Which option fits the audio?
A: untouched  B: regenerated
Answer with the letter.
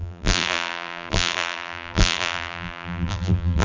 B